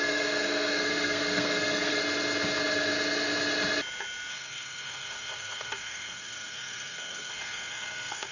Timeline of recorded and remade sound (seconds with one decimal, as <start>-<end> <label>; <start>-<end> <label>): 0.0-2.0 remade; 2.0-4.3 recorded; 4.3-8.3 remade